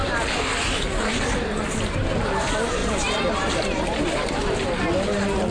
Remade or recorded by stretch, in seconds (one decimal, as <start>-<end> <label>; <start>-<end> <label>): 0.0-2.8 recorded; 2.8-3.6 remade; 3.6-5.5 recorded